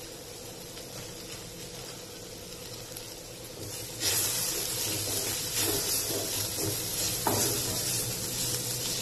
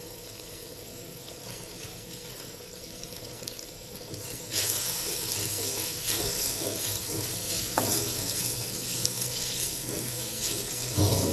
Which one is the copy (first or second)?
second